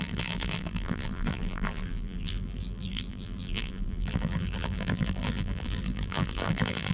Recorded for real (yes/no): no